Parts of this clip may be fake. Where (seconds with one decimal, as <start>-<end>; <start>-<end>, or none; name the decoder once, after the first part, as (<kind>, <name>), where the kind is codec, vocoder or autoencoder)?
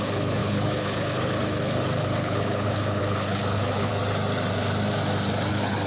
0.0-3.9 (codec, HILCodec); 5.5-5.9